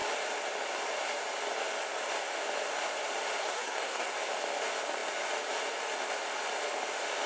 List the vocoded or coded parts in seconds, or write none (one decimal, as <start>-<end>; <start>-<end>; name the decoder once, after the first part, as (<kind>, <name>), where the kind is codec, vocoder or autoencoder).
3.4-4.1 (codec, SNAC)